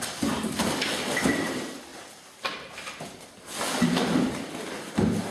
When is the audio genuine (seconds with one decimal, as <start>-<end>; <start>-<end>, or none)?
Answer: 0.0-5.3